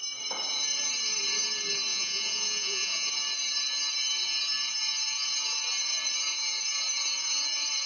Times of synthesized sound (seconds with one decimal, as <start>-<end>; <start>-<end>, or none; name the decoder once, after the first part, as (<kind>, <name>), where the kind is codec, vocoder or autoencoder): 1.9-3.1 (vocoder, Vocos)